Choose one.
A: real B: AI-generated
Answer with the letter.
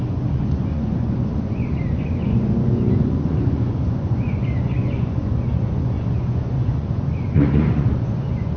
B